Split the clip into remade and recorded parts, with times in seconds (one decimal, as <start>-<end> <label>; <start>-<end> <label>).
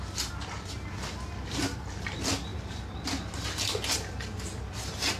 0.0-5.2 recorded